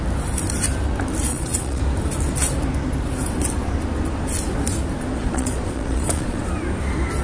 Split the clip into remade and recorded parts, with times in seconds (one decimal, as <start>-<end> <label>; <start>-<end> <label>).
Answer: 0.0-1.3 recorded; 1.3-1.8 remade; 1.8-5.2 recorded; 5.2-6.5 remade; 6.5-7.2 recorded